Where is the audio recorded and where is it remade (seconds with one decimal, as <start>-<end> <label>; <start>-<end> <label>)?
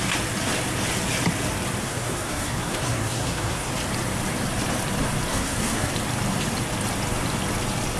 0.0-1.8 recorded; 1.8-3.7 remade; 3.7-5.3 recorded; 5.3-5.9 remade; 5.9-8.0 recorded